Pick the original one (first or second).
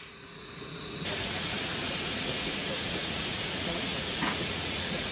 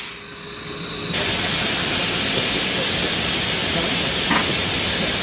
second